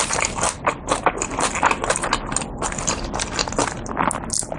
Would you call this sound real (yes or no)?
yes